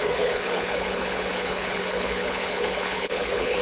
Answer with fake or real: fake